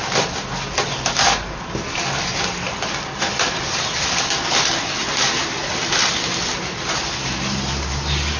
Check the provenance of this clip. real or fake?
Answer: real